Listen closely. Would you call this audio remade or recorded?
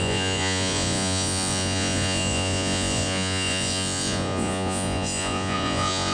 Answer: remade